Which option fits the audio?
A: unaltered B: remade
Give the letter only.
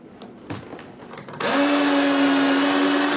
A